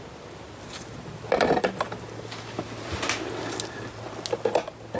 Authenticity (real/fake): real